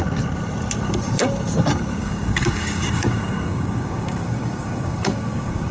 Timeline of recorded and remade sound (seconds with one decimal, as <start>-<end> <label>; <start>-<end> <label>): 0.0-2.0 recorded; 2.0-5.7 remade